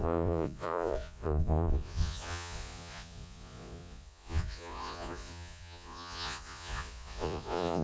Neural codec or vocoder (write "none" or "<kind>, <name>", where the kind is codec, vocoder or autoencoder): vocoder, Vocos